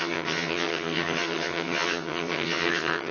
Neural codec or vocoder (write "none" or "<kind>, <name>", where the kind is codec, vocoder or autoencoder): vocoder, HiFi-GAN